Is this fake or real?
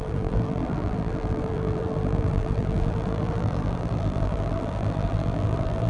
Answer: fake